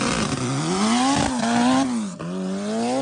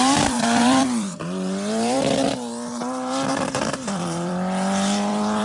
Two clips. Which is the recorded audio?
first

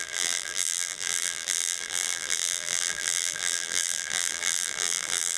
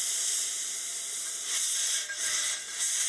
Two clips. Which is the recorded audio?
second